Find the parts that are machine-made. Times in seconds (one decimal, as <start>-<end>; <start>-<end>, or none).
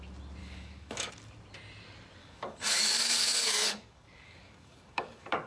0.4-1.1; 2.2-5.5